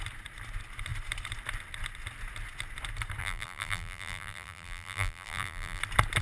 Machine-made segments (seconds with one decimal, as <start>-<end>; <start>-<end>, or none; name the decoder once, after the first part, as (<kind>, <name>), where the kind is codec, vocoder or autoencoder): 3.2-5.8 (vocoder, BigVGAN v2)